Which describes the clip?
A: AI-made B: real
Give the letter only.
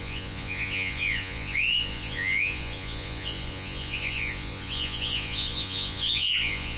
A